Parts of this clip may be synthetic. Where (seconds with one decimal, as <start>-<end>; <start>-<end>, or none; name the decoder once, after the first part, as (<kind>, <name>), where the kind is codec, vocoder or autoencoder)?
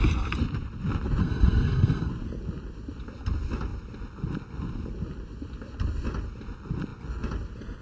1.2-2.1 (codec, SNAC)